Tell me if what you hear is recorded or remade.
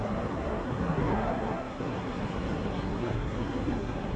remade